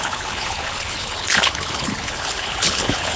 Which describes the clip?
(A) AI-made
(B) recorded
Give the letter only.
A